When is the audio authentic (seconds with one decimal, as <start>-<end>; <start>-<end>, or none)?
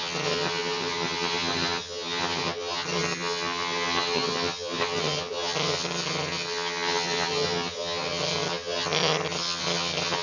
none